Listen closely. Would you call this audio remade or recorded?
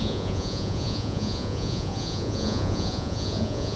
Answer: remade